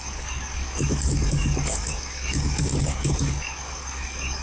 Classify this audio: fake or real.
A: fake